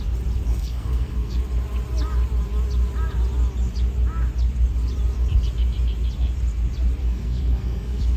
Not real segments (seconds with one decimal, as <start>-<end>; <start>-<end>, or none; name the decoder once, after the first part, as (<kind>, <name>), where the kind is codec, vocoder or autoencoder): 0.5-1.4 (codec, SNAC); 7.0-8.2